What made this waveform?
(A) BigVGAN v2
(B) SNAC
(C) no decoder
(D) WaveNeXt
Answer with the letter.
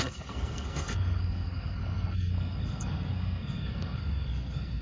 B